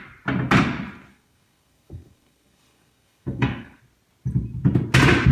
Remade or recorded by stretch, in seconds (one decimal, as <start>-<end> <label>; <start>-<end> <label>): 0.0-1.1 recorded; 1.1-3.8 remade; 3.8-5.3 recorded